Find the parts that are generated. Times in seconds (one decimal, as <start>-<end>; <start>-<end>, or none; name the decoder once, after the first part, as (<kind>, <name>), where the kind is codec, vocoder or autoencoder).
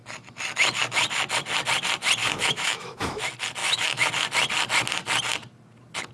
2.2-3.2 (autoencoder, DAC-VAE); 3.6-4.1